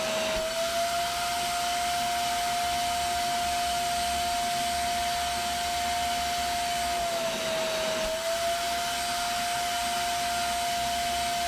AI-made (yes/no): no